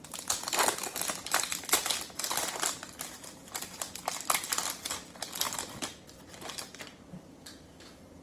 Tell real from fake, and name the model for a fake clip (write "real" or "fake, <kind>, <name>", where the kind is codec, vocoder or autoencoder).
real